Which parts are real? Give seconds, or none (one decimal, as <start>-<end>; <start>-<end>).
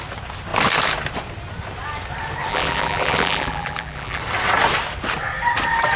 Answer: 0.0-2.5; 4.2-6.0